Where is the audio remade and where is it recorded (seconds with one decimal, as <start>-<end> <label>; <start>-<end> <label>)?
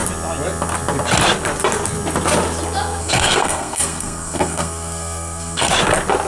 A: 0.0-3.0 recorded; 3.0-5.7 remade; 5.7-6.3 recorded